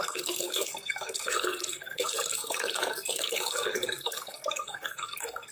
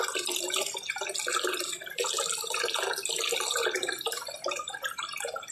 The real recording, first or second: second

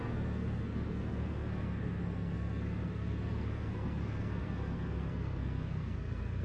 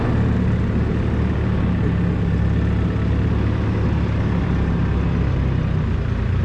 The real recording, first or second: second